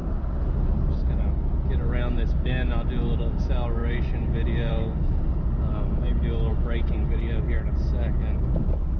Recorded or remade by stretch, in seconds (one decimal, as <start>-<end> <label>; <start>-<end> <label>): 0.0-9.0 recorded